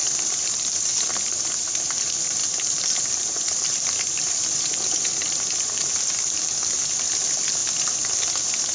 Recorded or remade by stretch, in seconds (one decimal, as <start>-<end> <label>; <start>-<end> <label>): 0.0-0.9 remade; 0.9-2.4 recorded; 2.4-5.4 remade; 5.4-8.7 recorded